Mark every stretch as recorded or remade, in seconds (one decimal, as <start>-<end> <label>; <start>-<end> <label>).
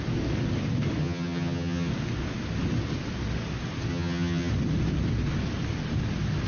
0.0-1.0 recorded; 1.0-1.9 remade; 1.9-3.9 recorded; 3.9-4.5 remade; 4.5-6.5 recorded